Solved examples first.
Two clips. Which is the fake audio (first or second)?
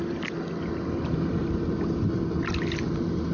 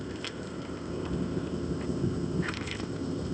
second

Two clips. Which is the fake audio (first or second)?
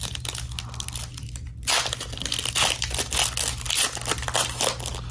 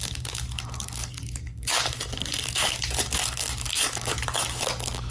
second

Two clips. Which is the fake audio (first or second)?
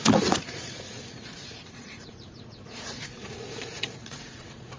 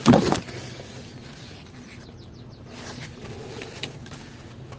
first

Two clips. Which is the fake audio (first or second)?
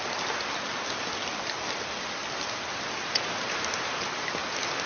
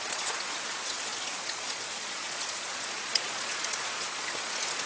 second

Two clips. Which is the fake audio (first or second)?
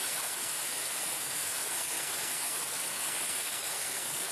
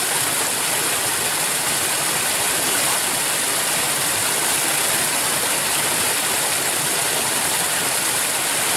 first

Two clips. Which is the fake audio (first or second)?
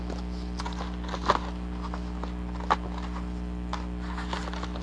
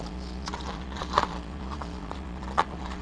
second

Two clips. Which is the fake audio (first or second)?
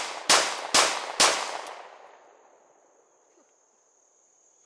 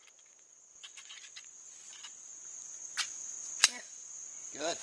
second